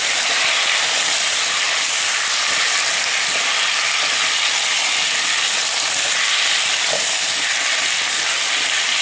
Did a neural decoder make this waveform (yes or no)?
no